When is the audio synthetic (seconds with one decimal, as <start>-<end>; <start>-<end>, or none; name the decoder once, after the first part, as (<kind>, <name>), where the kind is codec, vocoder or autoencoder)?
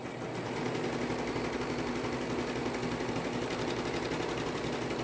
none